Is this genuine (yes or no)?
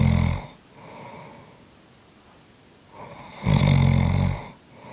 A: yes